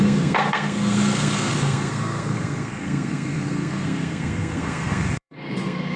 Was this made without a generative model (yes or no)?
no